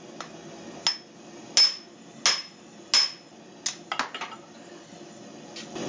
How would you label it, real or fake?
real